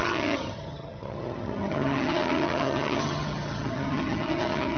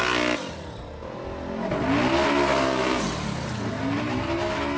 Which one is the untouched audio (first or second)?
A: second